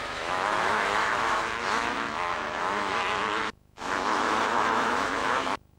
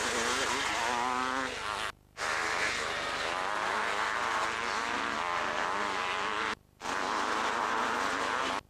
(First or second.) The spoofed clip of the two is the first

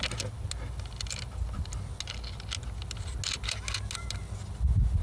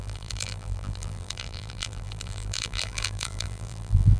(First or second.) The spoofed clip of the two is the second